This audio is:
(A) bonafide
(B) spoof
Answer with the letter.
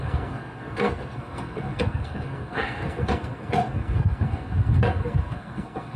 B